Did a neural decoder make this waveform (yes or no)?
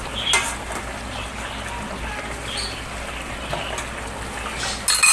no